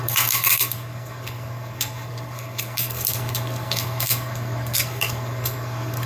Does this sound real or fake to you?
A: fake